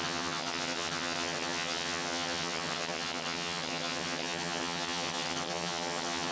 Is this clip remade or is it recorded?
remade